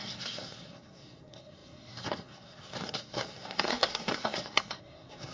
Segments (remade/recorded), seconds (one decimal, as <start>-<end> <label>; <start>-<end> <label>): 0.0-5.3 remade